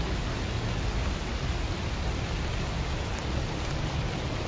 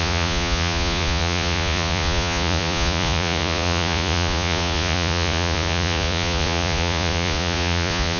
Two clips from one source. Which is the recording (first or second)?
first